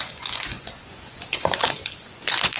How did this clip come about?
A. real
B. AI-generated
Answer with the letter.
B